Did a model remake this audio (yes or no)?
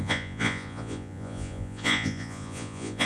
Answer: yes